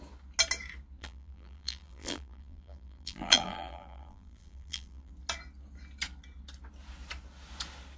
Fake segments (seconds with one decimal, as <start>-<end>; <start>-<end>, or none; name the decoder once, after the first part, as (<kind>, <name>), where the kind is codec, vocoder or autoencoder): 1.0-5.1 (vocoder, BigVGAN v2)

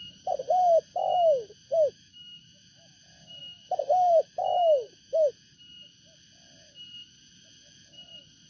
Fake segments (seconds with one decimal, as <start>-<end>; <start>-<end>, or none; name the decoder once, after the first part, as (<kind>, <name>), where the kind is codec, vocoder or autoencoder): 1.7-3.0 (autoencoder, DAC-VAE); 3.4-5.3

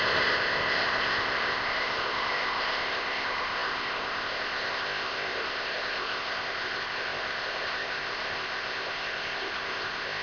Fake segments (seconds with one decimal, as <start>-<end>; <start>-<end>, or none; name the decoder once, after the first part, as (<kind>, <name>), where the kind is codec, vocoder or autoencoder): 0.0-10.2 (codec, ZipCodec)

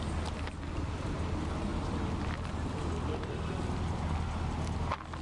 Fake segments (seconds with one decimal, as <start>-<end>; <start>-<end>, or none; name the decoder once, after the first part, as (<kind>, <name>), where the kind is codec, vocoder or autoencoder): none

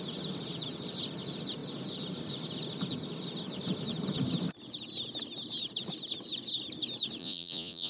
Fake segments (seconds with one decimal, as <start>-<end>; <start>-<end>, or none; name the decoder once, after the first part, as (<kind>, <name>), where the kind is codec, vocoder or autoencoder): 7.2-7.9 (vocoder, Vocos)